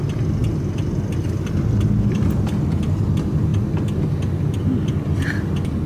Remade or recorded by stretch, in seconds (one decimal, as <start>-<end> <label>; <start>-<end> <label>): 0.0-5.9 recorded